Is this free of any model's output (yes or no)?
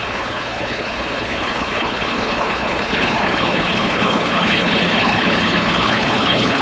no